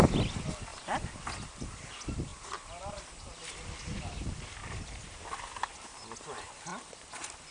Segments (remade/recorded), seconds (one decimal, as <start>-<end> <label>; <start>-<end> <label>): 0.0-0.7 recorded; 0.7-1.6 remade; 1.6-4.6 recorded; 4.6-5.3 remade; 5.3-7.5 recorded